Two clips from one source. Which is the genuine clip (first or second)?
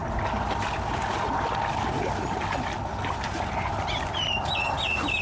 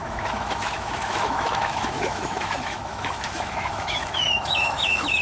first